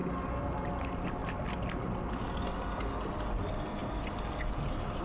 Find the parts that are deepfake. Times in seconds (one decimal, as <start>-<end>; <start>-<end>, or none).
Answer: none